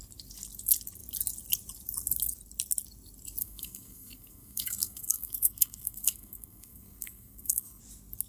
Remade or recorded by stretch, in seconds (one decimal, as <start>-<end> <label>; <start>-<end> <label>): 0.0-3.4 recorded; 3.4-7.8 remade; 7.8-8.3 recorded